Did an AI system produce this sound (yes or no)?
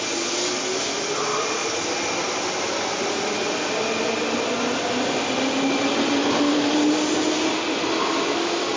no